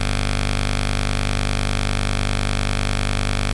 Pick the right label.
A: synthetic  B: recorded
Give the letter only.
B